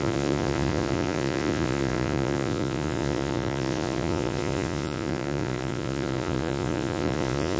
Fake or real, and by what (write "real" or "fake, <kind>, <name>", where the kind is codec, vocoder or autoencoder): fake, vocoder, Vocos